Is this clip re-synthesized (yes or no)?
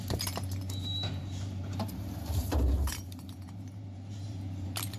yes